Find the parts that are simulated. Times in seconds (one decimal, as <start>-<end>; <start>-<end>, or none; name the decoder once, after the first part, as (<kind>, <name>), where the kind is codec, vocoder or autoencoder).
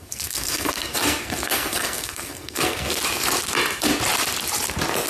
0.0-3.0 (codec, SNAC)